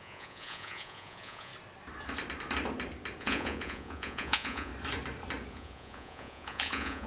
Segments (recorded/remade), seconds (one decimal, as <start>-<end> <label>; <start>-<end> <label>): 0.0-1.5 remade; 1.5-3.2 recorded; 3.2-4.7 remade; 4.7-5.5 recorded; 5.5-7.1 remade